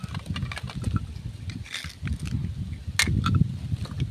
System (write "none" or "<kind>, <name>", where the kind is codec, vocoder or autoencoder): none